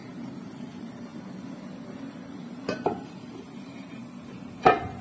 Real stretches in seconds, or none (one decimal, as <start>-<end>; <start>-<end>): 1.1-2.1; 4.0-5.0